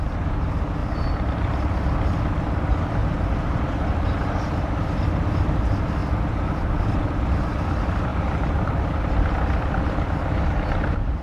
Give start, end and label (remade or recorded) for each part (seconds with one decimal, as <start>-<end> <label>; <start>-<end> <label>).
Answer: 0.0-0.8 recorded; 0.8-1.5 remade; 1.5-3.0 recorded; 3.0-4.7 remade; 4.7-8.1 recorded; 8.1-9.0 remade; 9.0-11.2 recorded